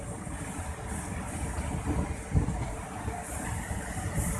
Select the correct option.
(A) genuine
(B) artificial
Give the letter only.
A